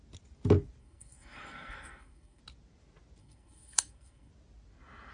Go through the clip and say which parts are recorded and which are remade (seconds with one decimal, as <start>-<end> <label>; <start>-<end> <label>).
0.0-0.8 recorded; 0.8-2.4 remade; 2.4-3.2 recorded; 3.2-4.3 remade; 4.3-5.1 recorded